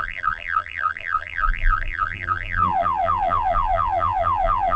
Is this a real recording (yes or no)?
no